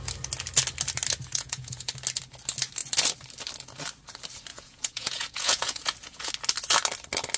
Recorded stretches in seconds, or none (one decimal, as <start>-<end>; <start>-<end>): 0.0-1.3; 1.9-4.5; 6.3-7.4